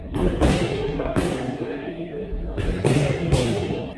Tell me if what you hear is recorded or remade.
remade